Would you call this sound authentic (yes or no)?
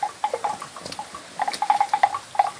yes